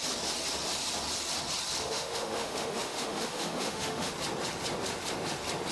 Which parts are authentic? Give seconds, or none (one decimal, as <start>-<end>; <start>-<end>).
0.0-1.8; 4.1-5.7